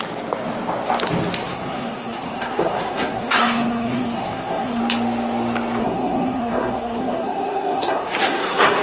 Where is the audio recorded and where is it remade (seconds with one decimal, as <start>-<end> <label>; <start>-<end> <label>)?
0.0-1.4 recorded; 1.4-4.8 remade; 4.8-5.8 recorded; 5.8-8.8 remade